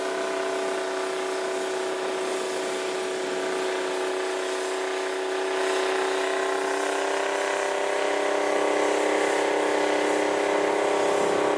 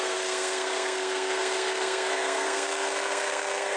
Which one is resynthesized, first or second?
second